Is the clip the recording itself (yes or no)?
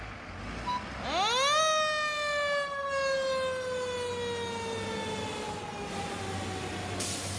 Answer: yes